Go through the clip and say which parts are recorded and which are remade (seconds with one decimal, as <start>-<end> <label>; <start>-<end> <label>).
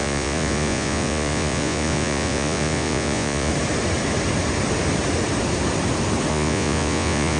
0.0-3.5 remade; 3.5-6.3 recorded; 6.3-7.4 remade